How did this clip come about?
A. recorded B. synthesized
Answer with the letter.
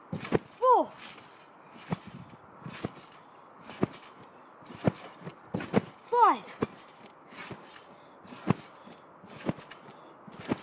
A